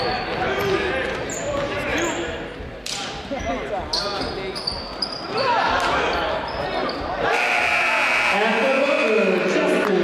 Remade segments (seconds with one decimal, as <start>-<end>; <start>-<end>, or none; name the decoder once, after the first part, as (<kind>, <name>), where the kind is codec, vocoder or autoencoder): none

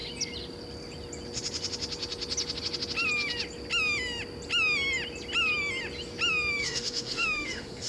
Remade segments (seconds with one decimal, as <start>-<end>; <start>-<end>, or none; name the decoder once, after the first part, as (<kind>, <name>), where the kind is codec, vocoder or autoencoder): 6.6-7.9 (autoencoder, DAC-VAE)

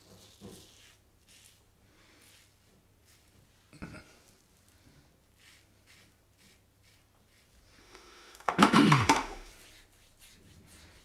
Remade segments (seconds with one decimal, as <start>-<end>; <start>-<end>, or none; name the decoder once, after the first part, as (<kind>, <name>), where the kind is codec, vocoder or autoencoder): 7.8-9.5 (autoencoder, DAC-VAE)